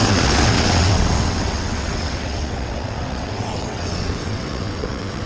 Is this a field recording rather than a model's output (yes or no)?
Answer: no